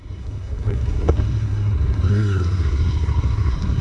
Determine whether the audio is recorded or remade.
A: remade